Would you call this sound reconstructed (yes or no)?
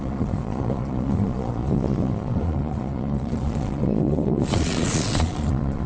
yes